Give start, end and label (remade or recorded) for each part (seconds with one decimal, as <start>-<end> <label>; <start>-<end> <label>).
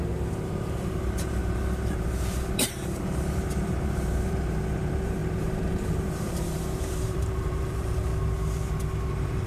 0.0-8.1 remade; 8.1-9.1 recorded; 9.1-9.5 remade